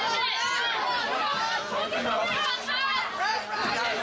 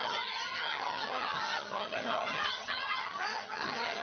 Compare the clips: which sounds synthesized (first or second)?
second